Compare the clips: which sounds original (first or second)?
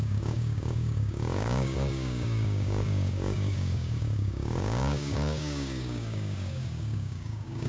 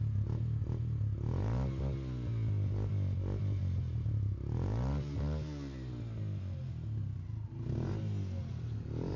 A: second